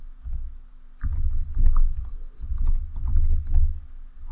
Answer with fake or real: real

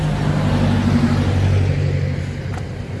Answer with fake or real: real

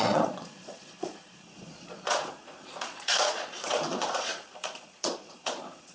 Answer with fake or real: fake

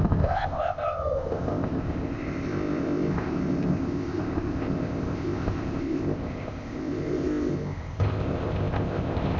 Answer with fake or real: fake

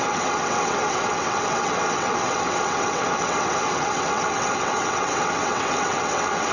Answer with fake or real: fake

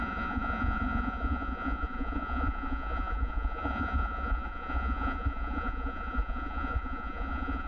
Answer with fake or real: fake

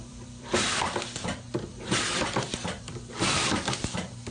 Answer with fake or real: fake